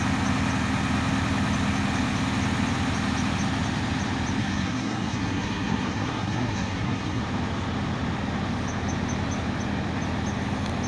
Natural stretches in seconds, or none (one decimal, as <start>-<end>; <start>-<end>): 0.0-4.4; 7.2-10.9